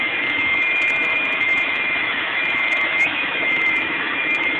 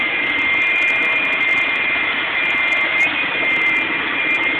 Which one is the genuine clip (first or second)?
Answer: second